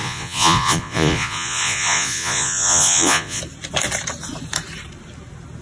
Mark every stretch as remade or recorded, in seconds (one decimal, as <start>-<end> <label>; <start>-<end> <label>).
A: 0.0-3.4 remade; 3.4-5.6 recorded